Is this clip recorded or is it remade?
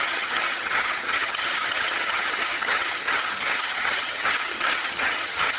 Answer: remade